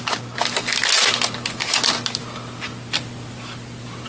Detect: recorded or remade recorded